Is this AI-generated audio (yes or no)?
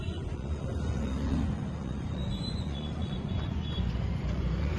yes